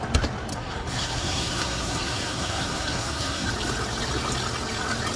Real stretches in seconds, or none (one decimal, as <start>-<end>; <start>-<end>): 0.0-0.5; 3.5-5.2